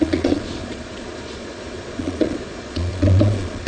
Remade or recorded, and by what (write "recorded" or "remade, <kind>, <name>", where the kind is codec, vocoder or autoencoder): remade, vocoder, Vocos